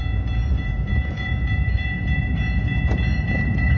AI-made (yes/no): yes